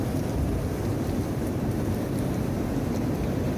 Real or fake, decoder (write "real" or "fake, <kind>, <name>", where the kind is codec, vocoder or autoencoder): real